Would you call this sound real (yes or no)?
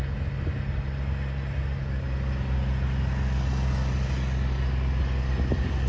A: yes